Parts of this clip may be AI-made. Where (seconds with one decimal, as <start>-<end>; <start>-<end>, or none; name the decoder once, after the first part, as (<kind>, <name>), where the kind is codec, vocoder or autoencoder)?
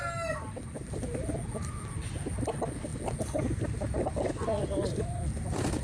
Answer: none